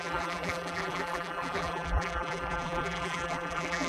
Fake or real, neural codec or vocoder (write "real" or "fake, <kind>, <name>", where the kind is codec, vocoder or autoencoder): fake, vocoder, BigVGAN v2